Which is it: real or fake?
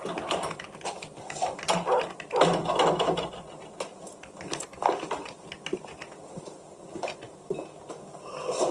real